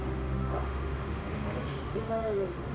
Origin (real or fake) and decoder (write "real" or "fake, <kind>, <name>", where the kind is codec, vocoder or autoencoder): fake, autoencoder, DAC-VAE